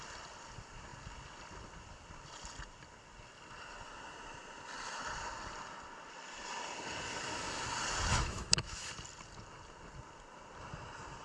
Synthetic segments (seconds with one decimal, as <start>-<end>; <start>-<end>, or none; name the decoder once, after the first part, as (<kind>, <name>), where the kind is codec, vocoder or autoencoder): 8.1-8.9 (autoencoder, DAC-VAE)